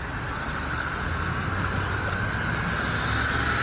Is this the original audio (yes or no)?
yes